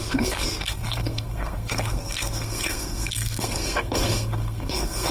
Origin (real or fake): fake